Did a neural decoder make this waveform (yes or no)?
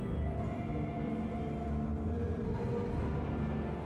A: no